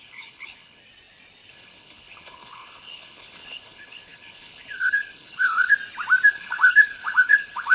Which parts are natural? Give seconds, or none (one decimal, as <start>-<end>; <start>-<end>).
0.8-1.5; 5.7-6.3